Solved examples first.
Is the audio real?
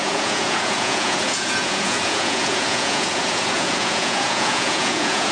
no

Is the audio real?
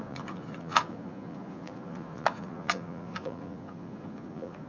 no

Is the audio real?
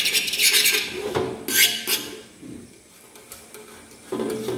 yes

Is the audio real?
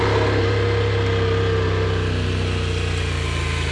yes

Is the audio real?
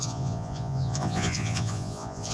no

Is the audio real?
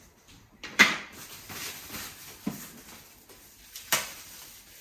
yes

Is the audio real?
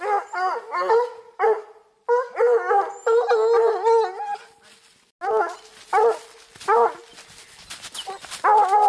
yes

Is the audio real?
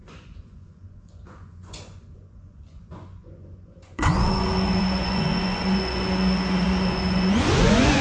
no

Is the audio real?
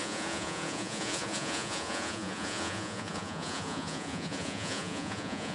no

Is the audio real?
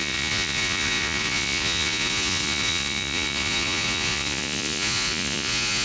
no